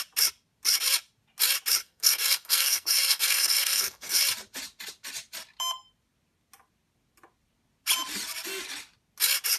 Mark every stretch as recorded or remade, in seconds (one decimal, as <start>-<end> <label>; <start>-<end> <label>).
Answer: 0.0-1.8 recorded; 1.8-4.2 remade; 4.2-9.6 recorded